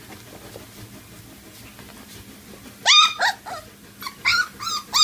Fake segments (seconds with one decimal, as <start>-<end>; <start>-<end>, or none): none